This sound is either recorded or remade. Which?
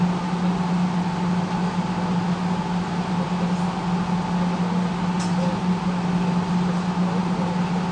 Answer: recorded